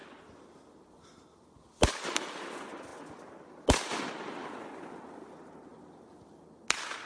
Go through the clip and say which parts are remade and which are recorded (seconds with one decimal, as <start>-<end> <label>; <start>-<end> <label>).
0.0-7.1 recorded